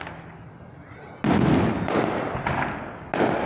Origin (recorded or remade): recorded